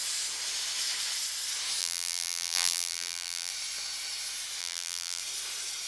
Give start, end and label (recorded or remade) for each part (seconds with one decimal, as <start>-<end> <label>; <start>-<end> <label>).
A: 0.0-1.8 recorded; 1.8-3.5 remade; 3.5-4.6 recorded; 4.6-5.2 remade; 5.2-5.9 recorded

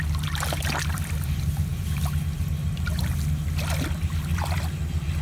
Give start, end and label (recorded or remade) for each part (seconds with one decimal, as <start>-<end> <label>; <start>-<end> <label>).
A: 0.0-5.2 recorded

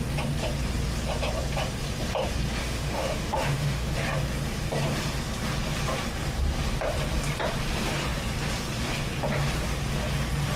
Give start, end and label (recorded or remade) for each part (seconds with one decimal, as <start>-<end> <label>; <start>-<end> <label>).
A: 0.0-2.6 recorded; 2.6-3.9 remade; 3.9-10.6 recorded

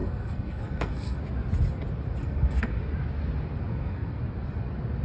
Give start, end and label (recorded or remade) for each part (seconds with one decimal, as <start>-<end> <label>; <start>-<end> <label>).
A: 0.0-1.2 remade; 1.2-2.2 recorded; 2.2-2.8 remade; 2.8-3.7 recorded; 3.7-4.2 remade; 4.2-5.0 recorded